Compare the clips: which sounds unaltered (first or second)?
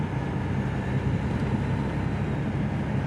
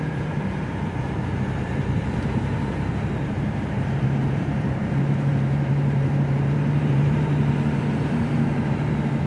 first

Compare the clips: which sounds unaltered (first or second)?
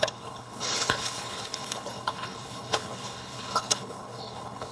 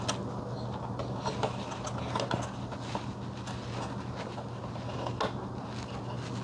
second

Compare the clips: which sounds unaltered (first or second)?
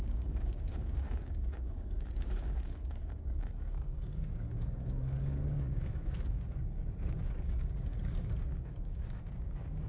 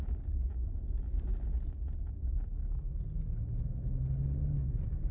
second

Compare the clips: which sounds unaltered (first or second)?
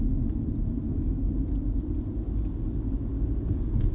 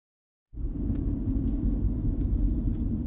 first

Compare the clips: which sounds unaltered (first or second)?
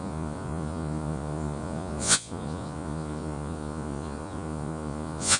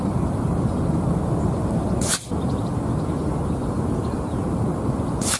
second